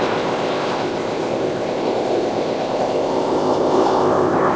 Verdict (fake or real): fake